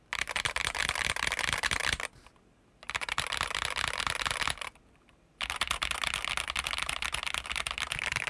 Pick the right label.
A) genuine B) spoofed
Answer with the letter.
A